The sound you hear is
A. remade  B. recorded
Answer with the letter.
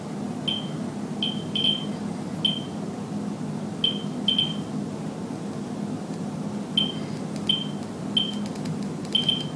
B